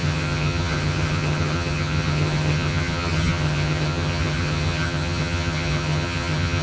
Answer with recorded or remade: remade